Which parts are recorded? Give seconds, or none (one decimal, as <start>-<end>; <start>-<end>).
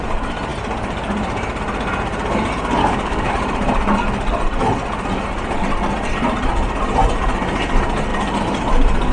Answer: 0.0-2.8; 3.3-9.1